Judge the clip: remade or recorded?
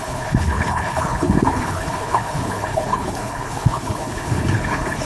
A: remade